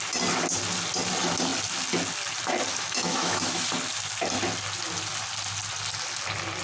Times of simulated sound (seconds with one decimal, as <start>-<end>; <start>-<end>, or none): 2.7-3.7